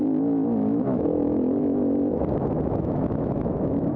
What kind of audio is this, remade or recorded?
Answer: remade